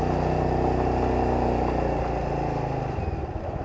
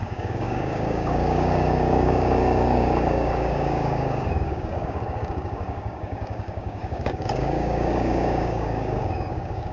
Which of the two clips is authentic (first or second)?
first